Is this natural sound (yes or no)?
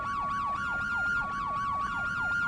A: yes